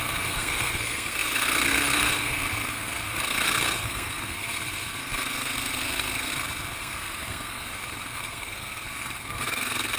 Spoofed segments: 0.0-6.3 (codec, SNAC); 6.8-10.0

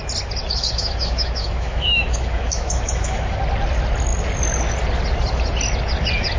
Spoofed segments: 0.4-3.4 (autoencoder, DAC-VAE)

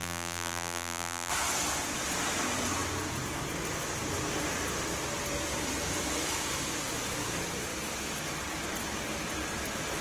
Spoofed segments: 0.0-1.3 (vocoder, BigVGAN v2)

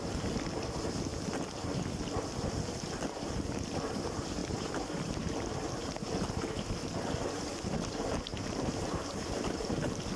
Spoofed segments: 4.4-5.3 (vocoder, BigVGAN v2); 8.3-10.2

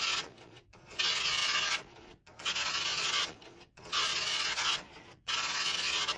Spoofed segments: 0.0-6.2 (vocoder, Vocos)

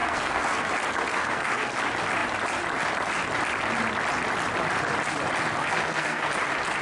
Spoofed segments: 0.0-0.7 (codec, SNAC); 1.1-1.7; 5.6-6.3

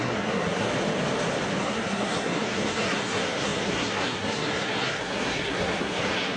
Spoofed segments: 0.0-0.7 (codec, SNAC); 1.6-6.4

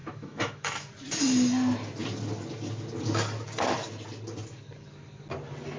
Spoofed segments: 0.0-0.9 (autoencoder, DAC-VAE)